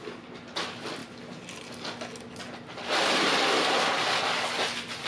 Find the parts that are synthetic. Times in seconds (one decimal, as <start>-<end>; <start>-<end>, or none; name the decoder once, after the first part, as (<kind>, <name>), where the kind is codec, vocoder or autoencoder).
none